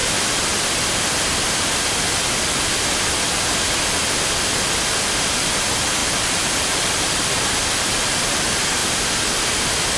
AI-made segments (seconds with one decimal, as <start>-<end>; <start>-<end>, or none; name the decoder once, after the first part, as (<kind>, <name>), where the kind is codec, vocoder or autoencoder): 6.0-8.4 (vocoder, BigVGAN v2)